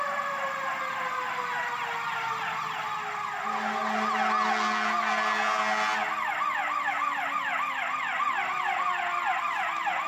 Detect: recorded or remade recorded